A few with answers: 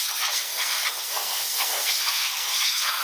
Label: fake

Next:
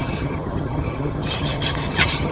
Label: fake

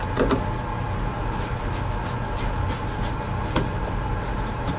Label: real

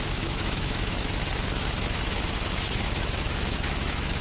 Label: fake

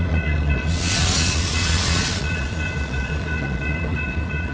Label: fake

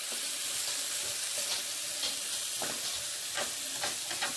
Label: real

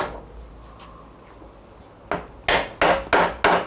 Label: real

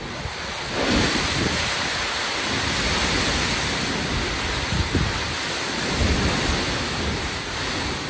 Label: real